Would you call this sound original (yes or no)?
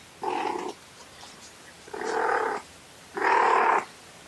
yes